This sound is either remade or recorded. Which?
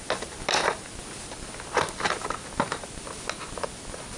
recorded